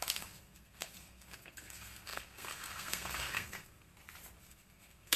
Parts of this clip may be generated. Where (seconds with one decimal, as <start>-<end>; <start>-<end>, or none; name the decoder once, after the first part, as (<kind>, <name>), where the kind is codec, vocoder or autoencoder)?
0.0-3.9 (codec, SNAC); 4.4-5.2